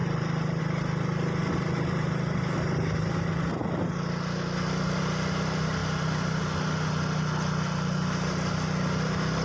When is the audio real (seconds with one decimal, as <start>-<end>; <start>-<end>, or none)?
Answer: 0.6-5.8; 6.4-9.4